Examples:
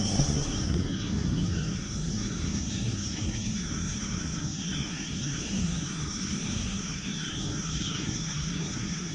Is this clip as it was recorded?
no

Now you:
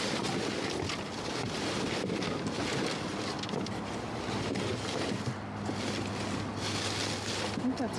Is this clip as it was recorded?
yes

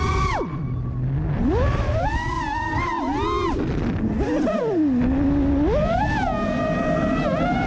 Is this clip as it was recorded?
yes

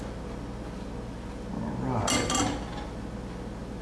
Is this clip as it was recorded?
yes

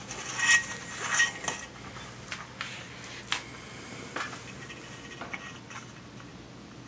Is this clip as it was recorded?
yes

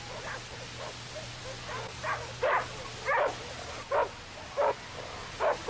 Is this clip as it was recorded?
yes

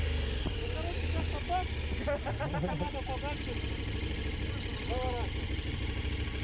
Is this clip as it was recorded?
yes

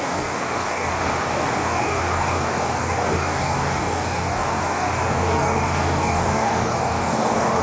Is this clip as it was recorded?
no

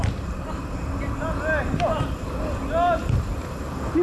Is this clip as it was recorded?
yes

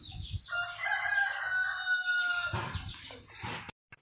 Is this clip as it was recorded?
yes